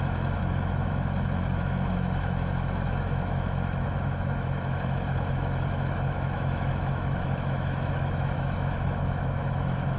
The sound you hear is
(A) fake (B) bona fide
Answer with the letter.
A